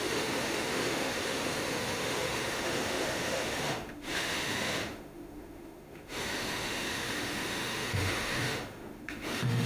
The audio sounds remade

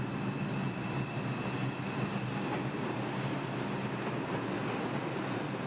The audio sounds recorded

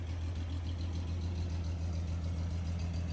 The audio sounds recorded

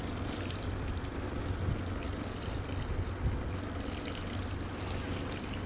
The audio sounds recorded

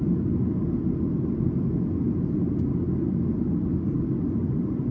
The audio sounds recorded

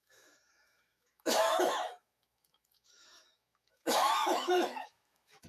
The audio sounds remade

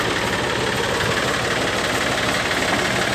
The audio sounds recorded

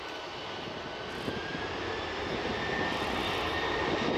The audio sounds recorded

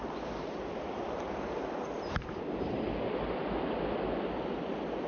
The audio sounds recorded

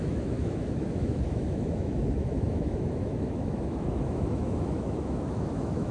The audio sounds remade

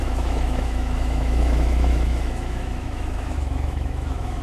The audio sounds remade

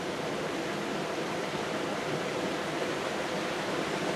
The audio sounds recorded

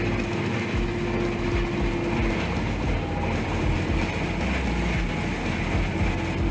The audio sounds recorded